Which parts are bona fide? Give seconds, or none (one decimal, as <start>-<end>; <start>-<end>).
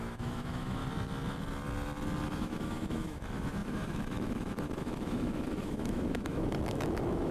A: 0.8-2.4